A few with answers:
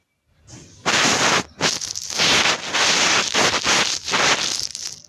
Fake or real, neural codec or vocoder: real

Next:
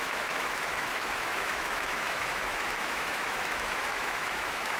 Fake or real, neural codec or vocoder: fake, autoencoder, DAC-VAE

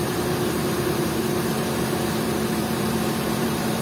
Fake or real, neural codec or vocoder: fake, vocoder, BigVGAN v2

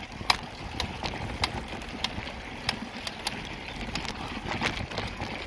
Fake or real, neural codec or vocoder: real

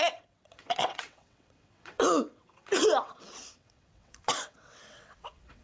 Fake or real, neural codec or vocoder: fake, vocoder, WaveNeXt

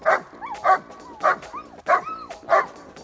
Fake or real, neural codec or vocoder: real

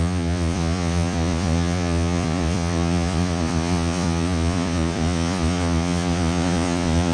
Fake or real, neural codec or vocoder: fake, vocoder, Vocos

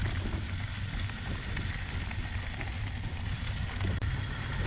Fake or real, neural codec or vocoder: real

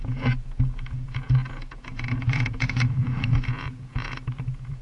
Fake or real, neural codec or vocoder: fake, vocoder, Vocos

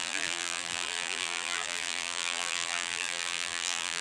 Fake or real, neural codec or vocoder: fake, vocoder, BigVGAN v2